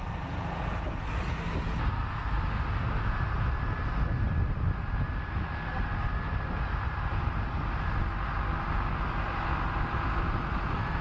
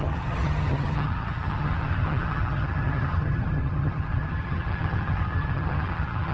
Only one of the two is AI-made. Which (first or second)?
second